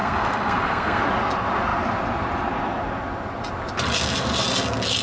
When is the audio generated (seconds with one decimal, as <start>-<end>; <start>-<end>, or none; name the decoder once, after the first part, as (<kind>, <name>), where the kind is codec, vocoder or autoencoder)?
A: 0.0-1.0 (codec, SNAC)